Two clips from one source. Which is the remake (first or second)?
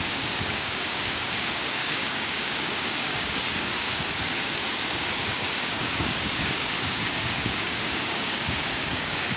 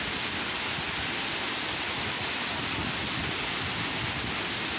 first